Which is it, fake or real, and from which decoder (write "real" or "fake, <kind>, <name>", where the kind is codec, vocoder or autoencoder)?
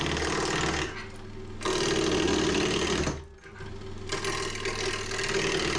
real